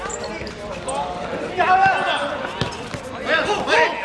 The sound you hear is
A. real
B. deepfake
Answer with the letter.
A